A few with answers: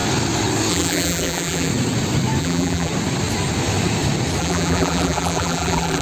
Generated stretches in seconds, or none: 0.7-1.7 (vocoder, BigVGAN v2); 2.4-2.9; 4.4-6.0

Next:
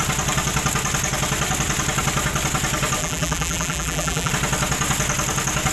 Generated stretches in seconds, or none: 3.0-4.3 (vocoder, BigVGAN v2)

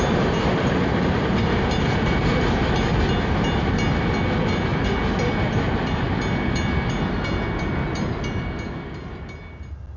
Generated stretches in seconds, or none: 0.9-1.6 (vocoder, BigVGAN v2); 4.7-5.3

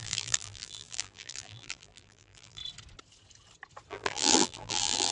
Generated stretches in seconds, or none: 0.0-2.6 (vocoder, BigVGAN v2); 3.9-5.1

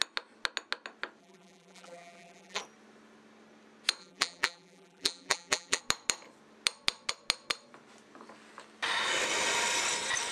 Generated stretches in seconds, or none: 1.2-2.6 (vocoder, BigVGAN v2); 4.0-5.8